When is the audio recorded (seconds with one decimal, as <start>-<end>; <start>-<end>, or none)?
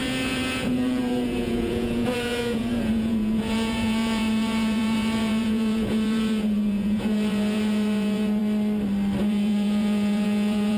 8.4-9.2